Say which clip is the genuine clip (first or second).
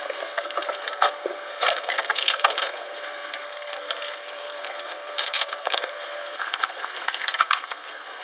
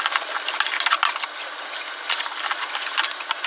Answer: second